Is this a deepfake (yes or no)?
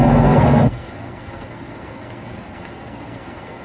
yes